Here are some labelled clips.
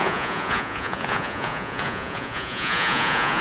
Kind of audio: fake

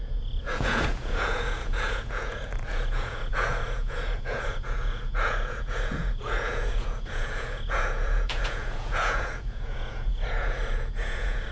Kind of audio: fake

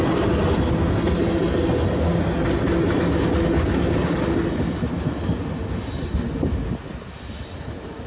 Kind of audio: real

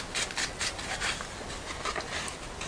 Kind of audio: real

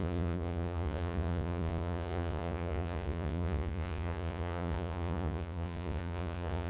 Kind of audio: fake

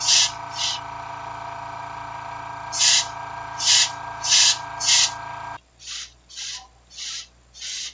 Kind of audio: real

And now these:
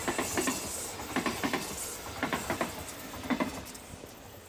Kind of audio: real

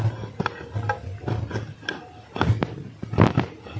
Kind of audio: real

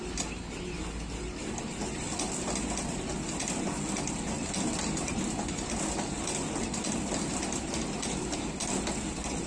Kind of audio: real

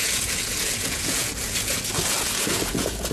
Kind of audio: fake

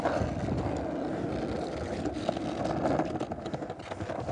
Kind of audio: real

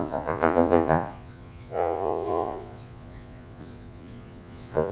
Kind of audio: fake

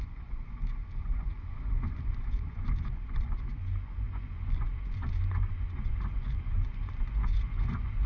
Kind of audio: fake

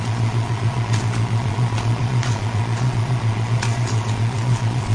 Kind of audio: fake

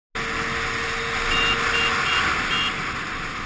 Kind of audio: real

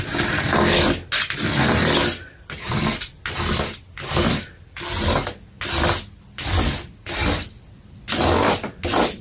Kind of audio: real